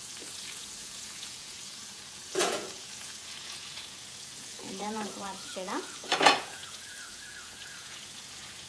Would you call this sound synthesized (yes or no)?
yes